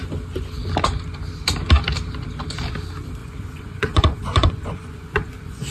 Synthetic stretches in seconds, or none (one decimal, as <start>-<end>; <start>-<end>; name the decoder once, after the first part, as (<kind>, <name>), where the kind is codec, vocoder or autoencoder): 3.2-5.7 (vocoder, Vocos)